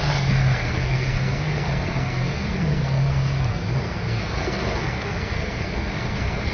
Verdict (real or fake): fake